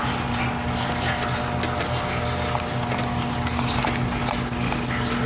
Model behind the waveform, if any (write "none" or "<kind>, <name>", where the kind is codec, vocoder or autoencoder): none